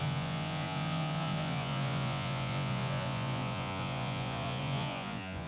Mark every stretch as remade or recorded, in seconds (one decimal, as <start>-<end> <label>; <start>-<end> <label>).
0.0-5.5 remade